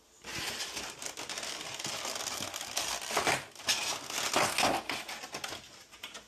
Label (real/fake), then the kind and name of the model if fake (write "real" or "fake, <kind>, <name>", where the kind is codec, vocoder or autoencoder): real